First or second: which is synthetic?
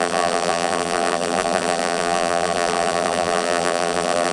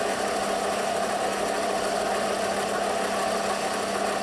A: first